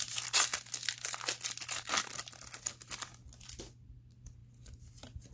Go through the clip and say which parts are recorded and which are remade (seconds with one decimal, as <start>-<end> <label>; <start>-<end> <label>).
0.0-5.3 recorded